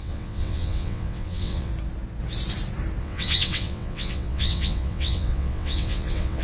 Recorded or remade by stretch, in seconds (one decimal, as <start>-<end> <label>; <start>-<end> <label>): 0.0-1.7 remade; 1.7-3.0 recorded; 3.0-6.4 remade